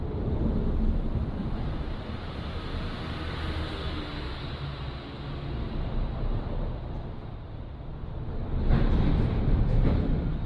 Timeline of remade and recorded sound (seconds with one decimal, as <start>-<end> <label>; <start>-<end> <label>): 0.0-1.4 recorded; 1.4-2.6 remade; 2.6-10.5 recorded